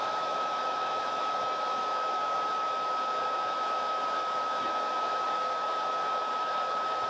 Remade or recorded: remade